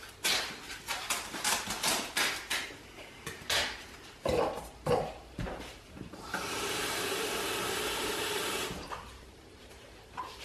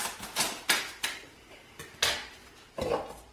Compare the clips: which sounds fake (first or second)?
first